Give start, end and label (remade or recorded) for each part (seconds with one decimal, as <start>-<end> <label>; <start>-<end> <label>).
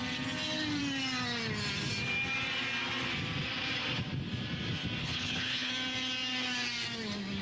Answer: 0.0-5.0 recorded; 5.0-5.7 remade; 5.7-7.4 recorded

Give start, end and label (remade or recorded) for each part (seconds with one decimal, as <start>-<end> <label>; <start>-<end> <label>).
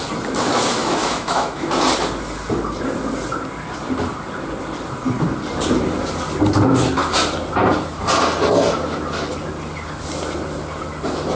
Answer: 0.0-0.8 recorded; 0.8-1.7 remade; 1.7-11.4 recorded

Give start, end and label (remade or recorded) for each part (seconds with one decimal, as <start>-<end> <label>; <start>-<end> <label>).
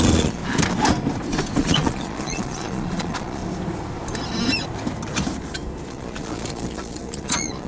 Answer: 0.0-0.4 remade; 0.4-1.6 recorded; 1.6-3.4 remade; 3.4-5.9 recorded; 5.9-7.7 remade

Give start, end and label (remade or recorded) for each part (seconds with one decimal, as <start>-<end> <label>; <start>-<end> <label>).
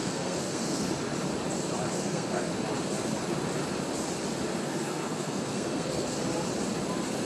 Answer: 0.0-0.9 remade; 0.9-1.9 recorded; 1.9-2.5 remade; 2.5-4.6 recorded; 4.6-6.2 remade; 6.2-7.2 recorded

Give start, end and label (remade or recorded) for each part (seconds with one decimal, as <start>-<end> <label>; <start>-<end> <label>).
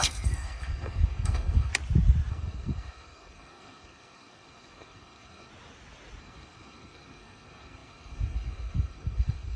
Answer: 0.0-1.7 remade; 1.7-2.3 recorded; 2.3-5.5 remade; 5.5-6.2 recorded; 6.2-9.6 remade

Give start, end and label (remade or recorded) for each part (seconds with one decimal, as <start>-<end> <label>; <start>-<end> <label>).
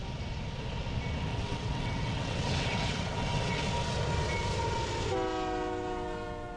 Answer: 0.0-1.3 recorded; 1.3-3.6 remade; 3.6-6.6 recorded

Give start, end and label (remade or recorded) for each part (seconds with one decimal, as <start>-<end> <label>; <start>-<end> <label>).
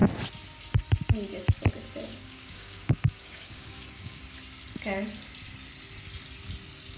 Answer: 0.0-2.1 recorded; 2.1-4.2 remade; 4.2-7.0 recorded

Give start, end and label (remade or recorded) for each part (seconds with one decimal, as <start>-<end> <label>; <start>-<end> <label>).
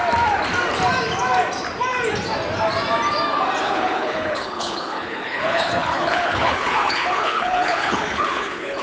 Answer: 0.0-3.6 recorded; 3.6-8.8 remade